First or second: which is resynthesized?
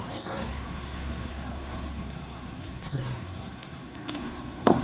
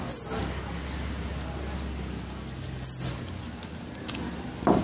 first